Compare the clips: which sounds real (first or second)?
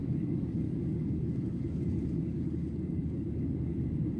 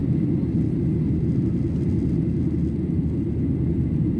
second